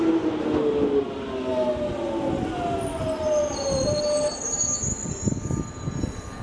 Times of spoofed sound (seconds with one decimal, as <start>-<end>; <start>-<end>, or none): none